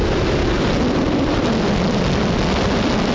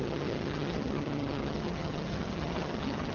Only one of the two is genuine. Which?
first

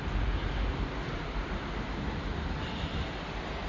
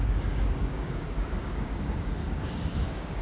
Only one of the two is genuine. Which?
first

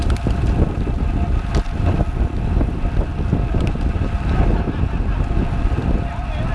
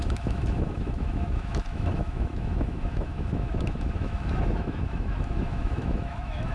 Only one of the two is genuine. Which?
first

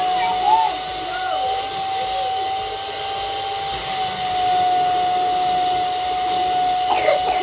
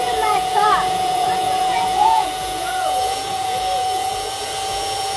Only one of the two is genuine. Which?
first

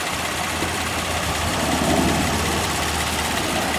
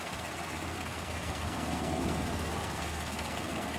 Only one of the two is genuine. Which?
first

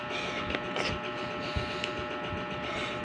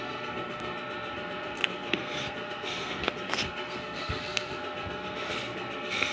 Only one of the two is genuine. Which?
first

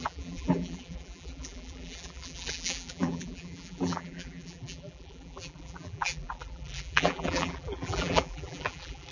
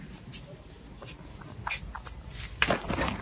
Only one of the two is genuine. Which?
second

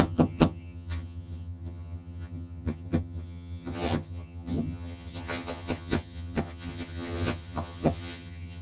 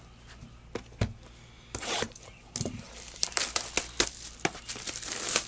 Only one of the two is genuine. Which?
second